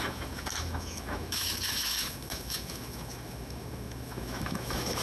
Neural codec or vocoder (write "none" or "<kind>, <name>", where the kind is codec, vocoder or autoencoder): autoencoder, DAC-VAE